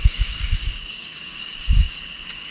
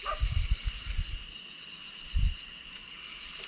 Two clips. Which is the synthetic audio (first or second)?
first